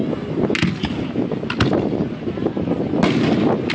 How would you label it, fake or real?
real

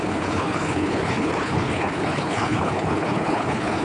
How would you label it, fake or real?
fake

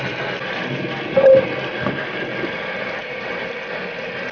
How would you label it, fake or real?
real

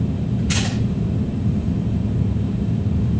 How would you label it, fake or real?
fake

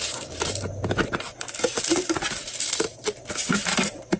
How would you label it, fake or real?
real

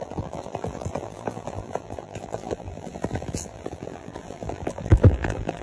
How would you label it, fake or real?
fake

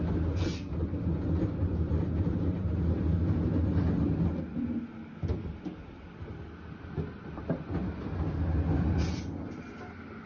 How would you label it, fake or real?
real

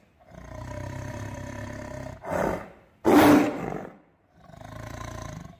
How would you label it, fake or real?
real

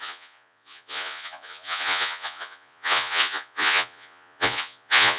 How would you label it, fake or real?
fake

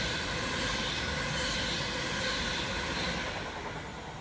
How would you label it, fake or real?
real